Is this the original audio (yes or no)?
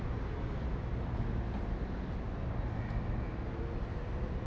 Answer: yes